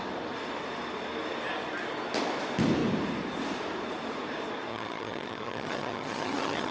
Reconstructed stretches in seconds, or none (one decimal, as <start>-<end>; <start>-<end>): 4.7-6.7